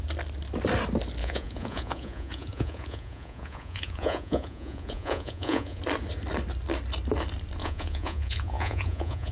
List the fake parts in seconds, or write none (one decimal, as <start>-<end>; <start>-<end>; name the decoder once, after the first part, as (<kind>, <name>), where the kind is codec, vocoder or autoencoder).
1.2-5.8 (vocoder, Vocos); 7.6-9.3